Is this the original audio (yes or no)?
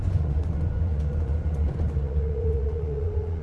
no